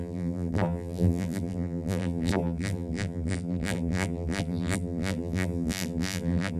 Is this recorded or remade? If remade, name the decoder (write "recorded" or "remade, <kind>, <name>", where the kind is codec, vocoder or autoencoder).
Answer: remade, vocoder, BigVGAN v2